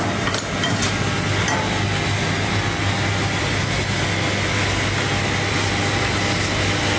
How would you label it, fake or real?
real